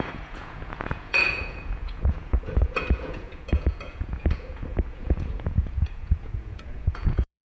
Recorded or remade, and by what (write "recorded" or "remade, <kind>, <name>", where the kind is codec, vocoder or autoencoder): remade, vocoder, Vocos